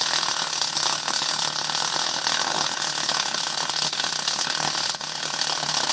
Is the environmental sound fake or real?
fake